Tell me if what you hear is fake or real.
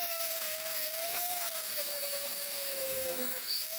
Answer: fake